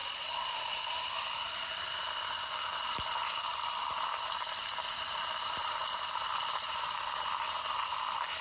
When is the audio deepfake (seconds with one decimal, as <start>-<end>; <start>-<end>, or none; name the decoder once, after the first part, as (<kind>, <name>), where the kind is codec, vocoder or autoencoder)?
none